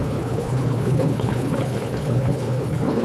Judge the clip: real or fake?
fake